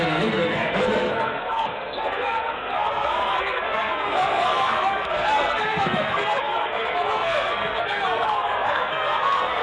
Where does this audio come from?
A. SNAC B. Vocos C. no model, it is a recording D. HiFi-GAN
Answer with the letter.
A